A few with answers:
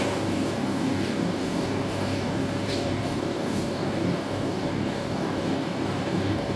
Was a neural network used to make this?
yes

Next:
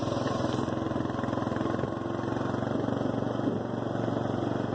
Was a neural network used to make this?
no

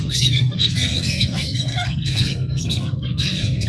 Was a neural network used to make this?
yes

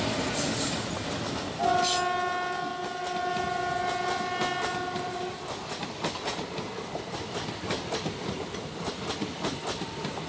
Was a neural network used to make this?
no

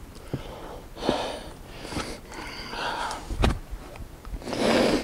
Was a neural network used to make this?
no